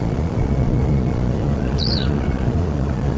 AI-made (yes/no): yes